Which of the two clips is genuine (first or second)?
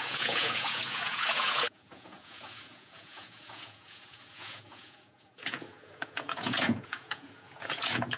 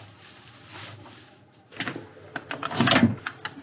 second